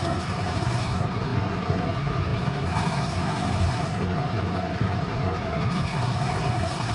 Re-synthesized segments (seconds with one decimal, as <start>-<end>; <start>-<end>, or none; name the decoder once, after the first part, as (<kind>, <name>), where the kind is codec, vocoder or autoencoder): 0.0-6.9 (codec, SNAC)